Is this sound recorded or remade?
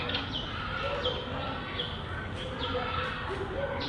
recorded